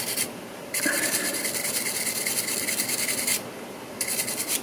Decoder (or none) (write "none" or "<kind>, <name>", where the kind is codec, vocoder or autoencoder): vocoder, BigVGAN v2